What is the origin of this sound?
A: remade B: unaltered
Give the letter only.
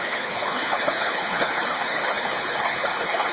A